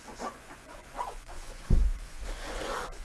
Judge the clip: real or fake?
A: fake